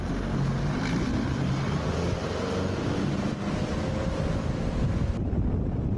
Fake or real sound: real